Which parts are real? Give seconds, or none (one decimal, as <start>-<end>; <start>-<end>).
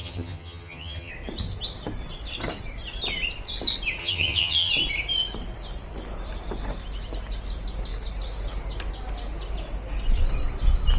1.1-4.0; 4.7-11.0